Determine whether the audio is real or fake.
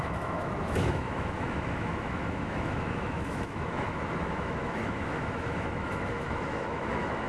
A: fake